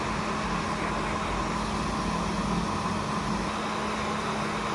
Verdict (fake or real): real